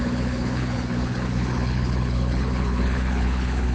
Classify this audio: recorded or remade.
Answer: remade